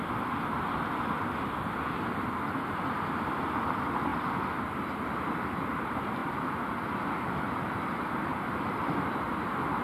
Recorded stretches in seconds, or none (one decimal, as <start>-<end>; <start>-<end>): 0.0-9.8